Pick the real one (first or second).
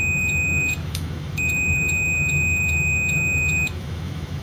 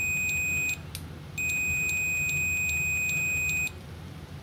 second